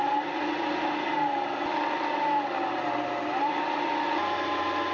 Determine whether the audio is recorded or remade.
recorded